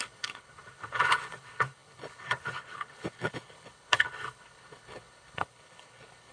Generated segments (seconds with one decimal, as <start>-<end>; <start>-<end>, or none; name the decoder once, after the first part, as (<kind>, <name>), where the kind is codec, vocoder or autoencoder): 0.0-6.3 (codec, HILCodec)